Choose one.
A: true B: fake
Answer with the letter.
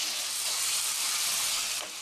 B